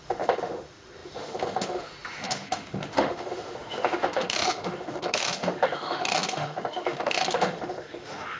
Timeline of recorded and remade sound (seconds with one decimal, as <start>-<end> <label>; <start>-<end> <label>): 0.0-8.4 remade